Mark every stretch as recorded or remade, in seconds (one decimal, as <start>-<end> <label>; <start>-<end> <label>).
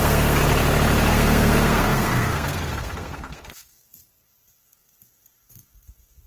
0.0-0.4 remade; 0.4-1.1 recorded; 1.1-6.3 remade